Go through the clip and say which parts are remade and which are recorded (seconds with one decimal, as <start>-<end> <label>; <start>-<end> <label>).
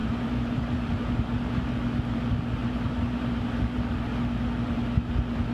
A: 0.0-1.7 remade; 1.7-2.6 recorded; 2.6-3.9 remade; 3.9-5.5 recorded